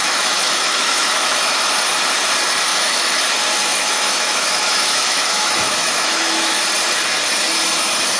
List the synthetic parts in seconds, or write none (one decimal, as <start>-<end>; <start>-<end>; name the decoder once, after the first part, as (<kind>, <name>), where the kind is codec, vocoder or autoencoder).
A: 0.0-1.5 (autoencoder, DAC-VAE); 2.7-3.2; 3.7-6.6

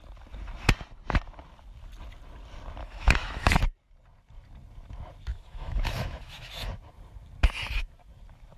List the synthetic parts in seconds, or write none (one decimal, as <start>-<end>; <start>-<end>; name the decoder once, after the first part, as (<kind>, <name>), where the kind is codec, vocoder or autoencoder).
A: 2.8-3.5 (autoencoder, DAC-VAE); 5.3-6.7

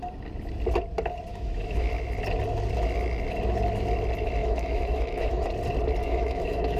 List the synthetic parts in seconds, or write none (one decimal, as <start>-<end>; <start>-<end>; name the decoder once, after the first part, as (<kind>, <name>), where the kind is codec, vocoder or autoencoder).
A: 1.3-1.9 (autoencoder, DAC-VAE); 4.4-5.5; 6.0-6.8

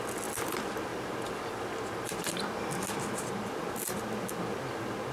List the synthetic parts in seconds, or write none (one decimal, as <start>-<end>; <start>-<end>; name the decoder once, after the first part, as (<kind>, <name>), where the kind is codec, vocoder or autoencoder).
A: none

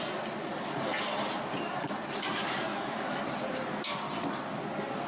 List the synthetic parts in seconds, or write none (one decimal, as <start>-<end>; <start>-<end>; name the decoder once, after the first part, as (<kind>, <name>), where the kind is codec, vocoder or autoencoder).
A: 2.7-3.2 (autoencoder, DAC-VAE)

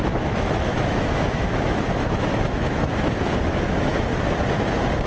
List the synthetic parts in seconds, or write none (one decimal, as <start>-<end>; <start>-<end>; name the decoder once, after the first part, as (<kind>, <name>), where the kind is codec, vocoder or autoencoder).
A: 0.0-4.1 (autoencoder, DAC-VAE)